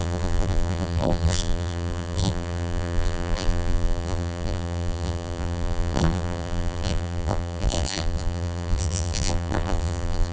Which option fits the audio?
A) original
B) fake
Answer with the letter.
B